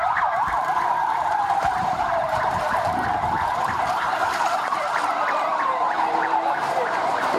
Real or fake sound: fake